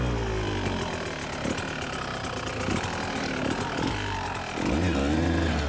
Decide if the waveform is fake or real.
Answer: real